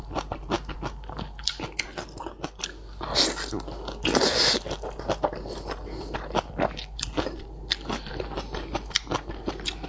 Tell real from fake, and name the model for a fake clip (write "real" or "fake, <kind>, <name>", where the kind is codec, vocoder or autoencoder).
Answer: real